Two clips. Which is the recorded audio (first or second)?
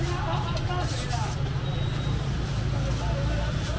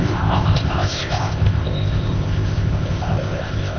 first